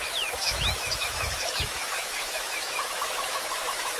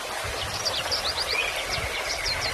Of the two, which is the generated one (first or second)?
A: first